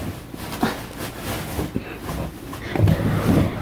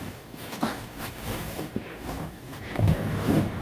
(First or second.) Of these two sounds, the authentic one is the first